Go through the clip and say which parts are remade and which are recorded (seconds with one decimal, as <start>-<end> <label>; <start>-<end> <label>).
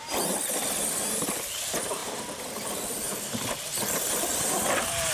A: 0.0-0.8 recorded; 0.8-1.3 remade; 1.3-2.0 recorded; 2.0-5.1 remade